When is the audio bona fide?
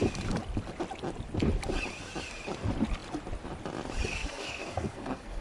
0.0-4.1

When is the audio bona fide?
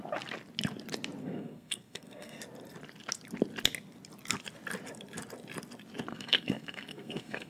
0.0-1.2; 2.4-6.1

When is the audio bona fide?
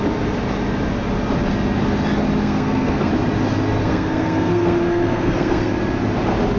0.0-2.4; 3.1-3.8; 5.7-6.6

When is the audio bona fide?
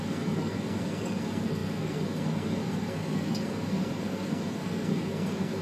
none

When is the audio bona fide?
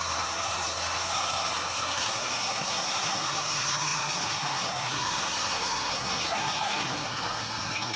none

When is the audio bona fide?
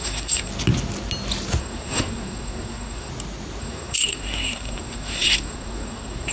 0.5-1.6; 3.1-3.6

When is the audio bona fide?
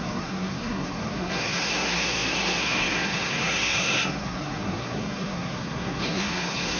none